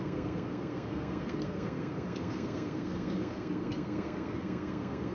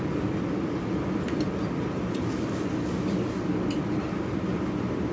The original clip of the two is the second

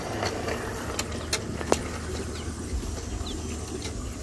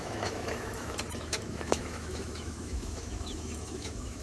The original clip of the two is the first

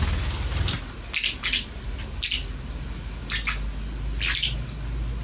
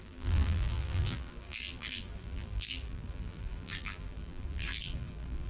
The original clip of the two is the first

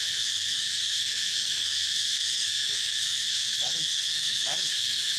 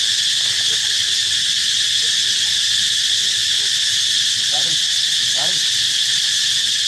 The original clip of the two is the second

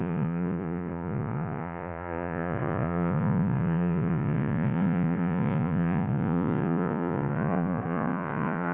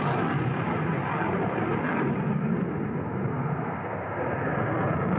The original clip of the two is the second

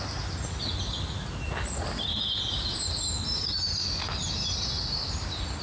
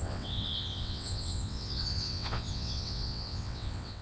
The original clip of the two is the first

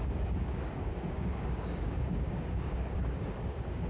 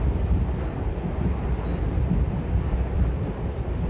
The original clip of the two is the second